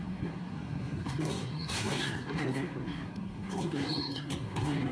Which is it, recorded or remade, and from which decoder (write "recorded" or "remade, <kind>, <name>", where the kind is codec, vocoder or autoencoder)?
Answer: remade, codec, SNAC